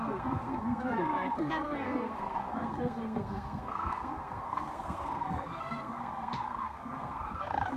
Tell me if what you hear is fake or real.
fake